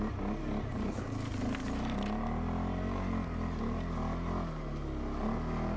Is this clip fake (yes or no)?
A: no